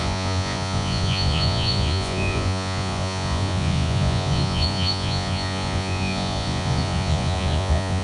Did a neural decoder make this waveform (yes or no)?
yes